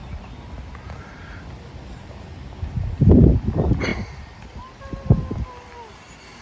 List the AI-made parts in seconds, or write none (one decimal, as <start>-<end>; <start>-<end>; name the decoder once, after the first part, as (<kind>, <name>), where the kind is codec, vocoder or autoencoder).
none